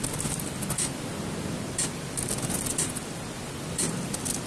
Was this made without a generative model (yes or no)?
yes